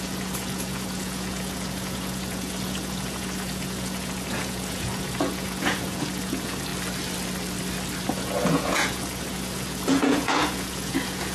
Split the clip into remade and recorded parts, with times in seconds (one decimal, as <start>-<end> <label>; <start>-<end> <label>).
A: 0.0-6.7 remade; 6.7-8.1 recorded; 8.1-11.3 remade